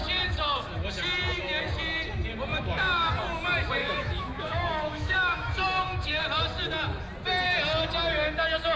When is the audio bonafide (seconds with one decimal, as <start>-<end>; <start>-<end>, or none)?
0.0-2.5; 3.1-3.8; 6.2-8.8